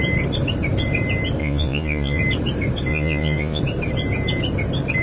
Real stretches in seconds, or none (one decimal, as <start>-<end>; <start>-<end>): 0.0-1.4; 2.2-2.9; 3.6-5.0